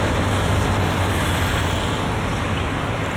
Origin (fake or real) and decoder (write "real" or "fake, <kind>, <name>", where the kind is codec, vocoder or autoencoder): real